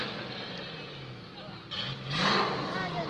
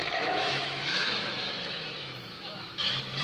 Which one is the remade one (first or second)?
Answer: second